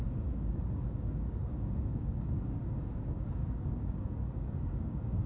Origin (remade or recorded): remade